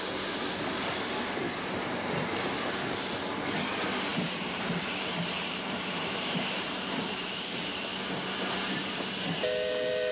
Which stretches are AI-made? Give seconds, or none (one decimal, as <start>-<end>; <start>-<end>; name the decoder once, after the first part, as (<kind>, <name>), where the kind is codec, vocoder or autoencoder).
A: 4.1-7.8 (vocoder, BigVGAN v2)